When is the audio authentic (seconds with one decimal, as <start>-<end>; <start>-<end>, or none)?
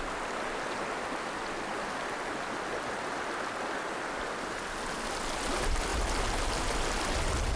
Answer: 0.0-7.6